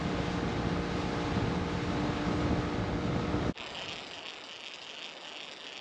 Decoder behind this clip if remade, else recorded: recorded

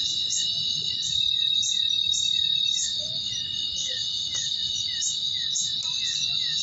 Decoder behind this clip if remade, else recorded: recorded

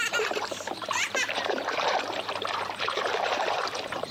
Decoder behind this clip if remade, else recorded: remade, vocoder, BigVGAN v2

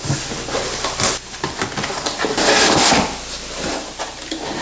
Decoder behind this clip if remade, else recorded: recorded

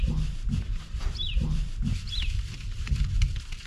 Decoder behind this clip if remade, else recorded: remade, vocoder, BigVGAN v2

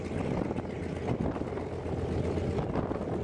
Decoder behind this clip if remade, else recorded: recorded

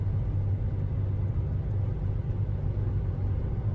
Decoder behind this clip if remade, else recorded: recorded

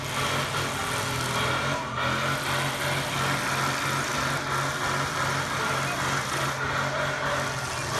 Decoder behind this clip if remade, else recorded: recorded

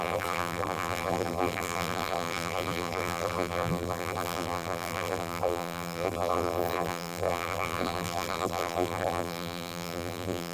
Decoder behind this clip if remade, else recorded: remade, vocoder, BigVGAN v2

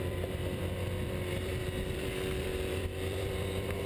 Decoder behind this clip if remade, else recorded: remade, vocoder, BigVGAN v2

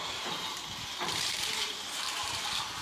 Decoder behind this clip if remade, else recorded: remade, vocoder, BigVGAN v2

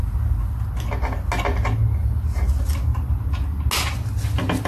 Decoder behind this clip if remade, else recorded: recorded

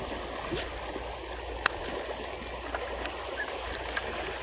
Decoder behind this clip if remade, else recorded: recorded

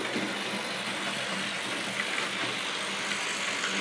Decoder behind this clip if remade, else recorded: recorded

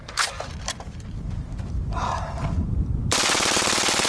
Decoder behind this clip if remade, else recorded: remade, vocoder, BigVGAN v2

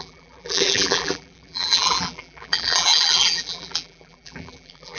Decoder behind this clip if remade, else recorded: remade, vocoder, BigVGAN v2